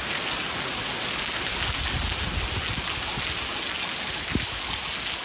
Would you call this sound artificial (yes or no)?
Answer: no